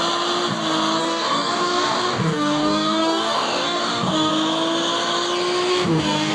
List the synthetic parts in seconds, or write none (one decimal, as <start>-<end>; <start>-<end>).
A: 1.0-4.3; 5.7-6.3

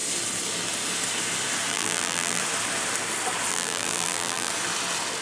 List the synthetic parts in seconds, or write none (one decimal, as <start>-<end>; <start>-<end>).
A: 1.7-2.4; 3.5-4.5

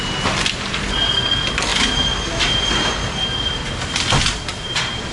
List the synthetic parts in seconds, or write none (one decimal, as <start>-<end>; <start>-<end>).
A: none